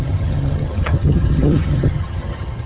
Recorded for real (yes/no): no